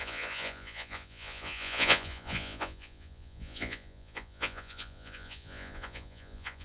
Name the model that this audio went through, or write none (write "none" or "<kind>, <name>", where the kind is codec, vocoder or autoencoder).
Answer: vocoder, Vocos